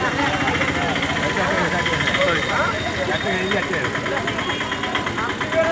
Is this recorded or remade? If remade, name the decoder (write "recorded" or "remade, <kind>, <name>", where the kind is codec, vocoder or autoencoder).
recorded